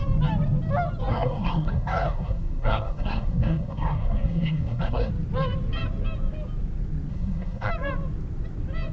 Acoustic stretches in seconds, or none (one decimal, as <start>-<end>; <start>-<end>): 0.0-1.1; 5.1-7.1; 7.7-8.9